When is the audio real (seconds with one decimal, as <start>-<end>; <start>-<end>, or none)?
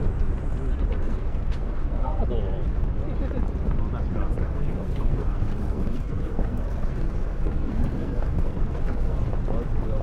0.0-1.0; 2.2-4.4; 9.2-10.0